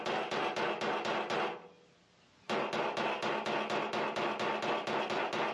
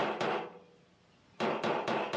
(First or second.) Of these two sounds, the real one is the first